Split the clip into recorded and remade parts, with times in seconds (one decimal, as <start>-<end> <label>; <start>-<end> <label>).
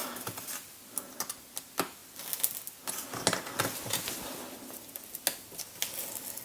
0.0-0.8 remade; 0.8-6.4 recorded